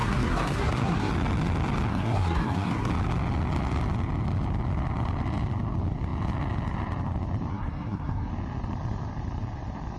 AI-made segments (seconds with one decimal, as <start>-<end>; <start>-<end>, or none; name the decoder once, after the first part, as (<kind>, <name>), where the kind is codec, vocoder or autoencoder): 0.0-1.1 (codec, SNAC); 1.9-2.9; 7.5-8.3